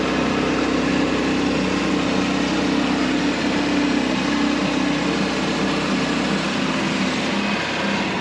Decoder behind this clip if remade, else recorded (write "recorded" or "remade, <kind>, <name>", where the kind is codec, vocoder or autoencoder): recorded